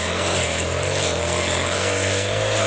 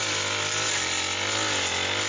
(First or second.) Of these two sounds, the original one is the second